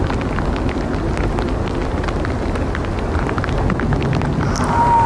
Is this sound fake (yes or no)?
no